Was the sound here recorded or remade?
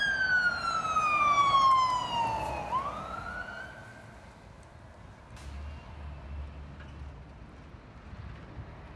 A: recorded